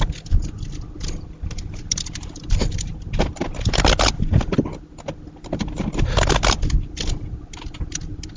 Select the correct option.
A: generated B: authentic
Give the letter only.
B